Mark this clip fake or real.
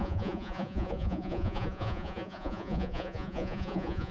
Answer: fake